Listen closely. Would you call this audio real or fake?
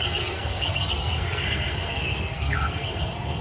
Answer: fake